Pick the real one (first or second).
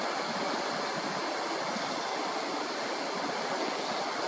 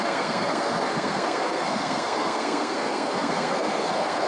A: first